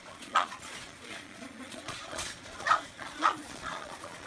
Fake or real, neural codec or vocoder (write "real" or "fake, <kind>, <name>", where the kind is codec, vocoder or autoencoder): fake, vocoder, Vocos